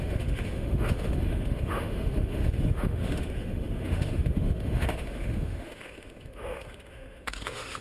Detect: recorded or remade remade